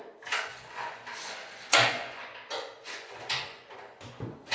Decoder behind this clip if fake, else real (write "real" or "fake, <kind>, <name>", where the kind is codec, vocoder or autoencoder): fake, vocoder, Vocos